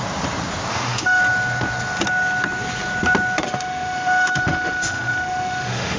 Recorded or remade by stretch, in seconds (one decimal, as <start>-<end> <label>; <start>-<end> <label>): 0.0-0.7 recorded; 0.7-1.2 remade; 1.2-3.4 recorded; 3.4-6.0 remade